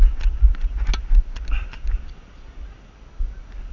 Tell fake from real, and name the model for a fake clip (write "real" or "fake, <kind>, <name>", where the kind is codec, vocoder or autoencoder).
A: real